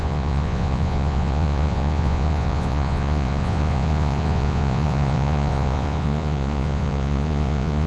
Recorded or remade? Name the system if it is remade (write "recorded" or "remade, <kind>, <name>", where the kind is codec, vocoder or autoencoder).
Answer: remade, vocoder, Vocos